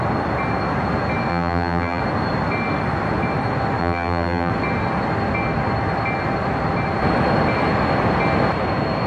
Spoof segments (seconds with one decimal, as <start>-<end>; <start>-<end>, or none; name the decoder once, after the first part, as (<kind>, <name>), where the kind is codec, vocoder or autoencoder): 1.3-2.0 (vocoder, BigVGAN v2); 3.8-4.5